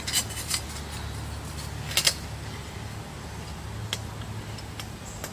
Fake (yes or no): no